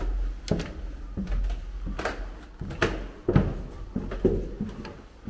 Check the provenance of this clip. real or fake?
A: real